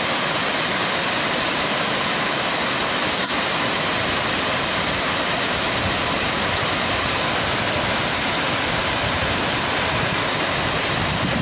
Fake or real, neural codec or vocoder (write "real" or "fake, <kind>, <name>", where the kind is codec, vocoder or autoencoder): fake, vocoder, BigVGAN v2